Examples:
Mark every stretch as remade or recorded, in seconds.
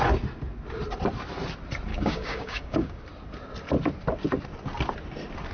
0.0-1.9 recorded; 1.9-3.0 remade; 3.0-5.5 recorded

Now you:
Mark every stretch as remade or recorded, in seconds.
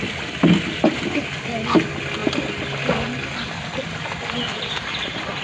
0.0-5.4 recorded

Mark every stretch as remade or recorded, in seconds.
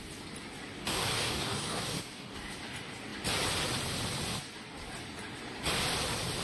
0.0-0.8 recorded; 0.8-2.3 remade; 2.3-6.4 recorded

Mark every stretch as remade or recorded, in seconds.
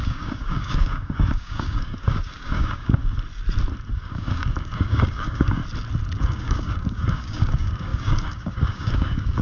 0.0-3.0 remade; 3.0-3.9 recorded; 3.9-5.6 remade; 5.6-6.2 recorded; 6.2-9.4 remade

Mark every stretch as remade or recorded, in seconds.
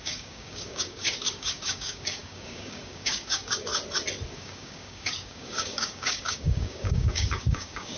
0.0-3.7 remade; 3.7-4.3 recorded; 4.3-8.0 remade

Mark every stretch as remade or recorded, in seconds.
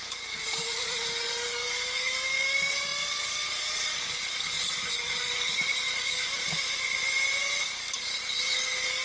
0.0-6.4 remade; 6.4-7.4 recorded; 7.4-9.0 remade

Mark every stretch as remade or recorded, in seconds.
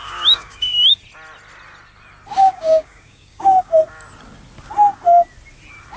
0.0-0.9 remade; 0.9-2.4 recorded; 2.4-3.8 remade; 3.8-6.0 recorded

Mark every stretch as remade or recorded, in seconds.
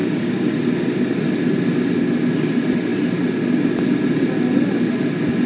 0.0-0.5 remade; 0.5-5.5 recorded